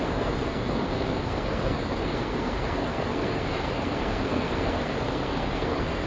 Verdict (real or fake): fake